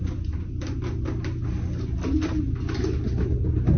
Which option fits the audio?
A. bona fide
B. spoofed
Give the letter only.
A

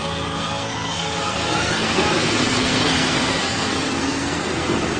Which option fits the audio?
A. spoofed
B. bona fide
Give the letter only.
A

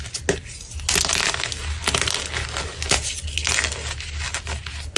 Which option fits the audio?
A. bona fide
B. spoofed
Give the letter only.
A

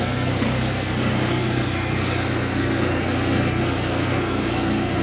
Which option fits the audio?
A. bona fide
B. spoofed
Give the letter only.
B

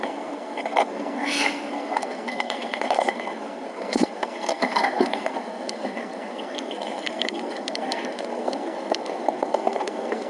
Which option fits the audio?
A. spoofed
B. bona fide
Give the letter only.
A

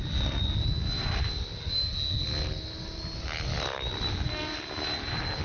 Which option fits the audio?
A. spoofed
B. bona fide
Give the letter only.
B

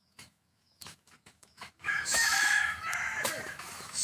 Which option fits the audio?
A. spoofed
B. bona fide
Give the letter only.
A